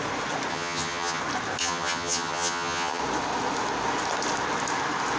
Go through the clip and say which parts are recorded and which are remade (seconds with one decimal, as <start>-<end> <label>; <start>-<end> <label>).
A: 0.0-0.5 recorded; 0.5-1.2 remade; 1.2-1.6 recorded; 1.6-3.0 remade; 3.0-5.2 recorded